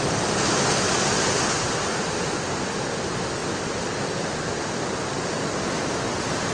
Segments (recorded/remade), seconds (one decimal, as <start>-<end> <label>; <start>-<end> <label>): 0.0-6.5 recorded